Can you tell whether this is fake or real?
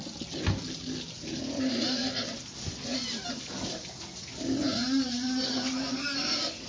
real